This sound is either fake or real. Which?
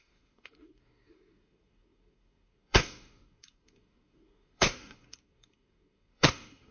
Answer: fake